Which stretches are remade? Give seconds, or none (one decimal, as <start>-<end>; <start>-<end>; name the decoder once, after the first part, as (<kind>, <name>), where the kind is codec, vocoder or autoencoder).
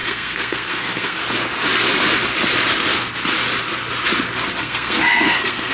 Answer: 0.0-1.2 (codec, SNAC); 4.6-5.7